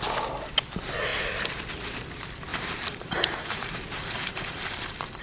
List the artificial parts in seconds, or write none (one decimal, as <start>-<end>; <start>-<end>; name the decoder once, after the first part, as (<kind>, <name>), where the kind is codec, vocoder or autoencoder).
2.5-5.2 (vocoder, BigVGAN v2)